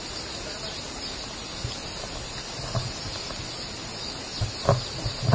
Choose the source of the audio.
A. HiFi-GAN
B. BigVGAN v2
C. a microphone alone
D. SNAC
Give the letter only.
C